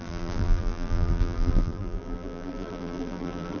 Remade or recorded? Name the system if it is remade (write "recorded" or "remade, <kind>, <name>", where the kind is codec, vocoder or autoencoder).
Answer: remade, vocoder, BigVGAN v2